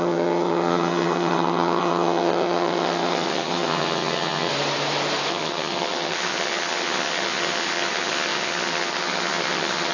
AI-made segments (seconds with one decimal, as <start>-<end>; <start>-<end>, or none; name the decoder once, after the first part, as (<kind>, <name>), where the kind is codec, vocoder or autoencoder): 0.0-4.5 (vocoder, HiFi-GAN); 5.3-9.9